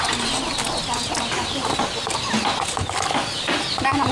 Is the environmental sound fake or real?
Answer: real